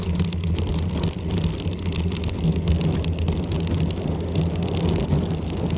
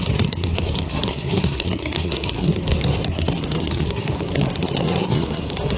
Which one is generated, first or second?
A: second